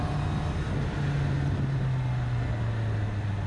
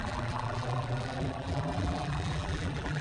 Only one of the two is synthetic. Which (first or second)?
second